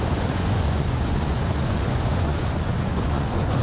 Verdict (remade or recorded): remade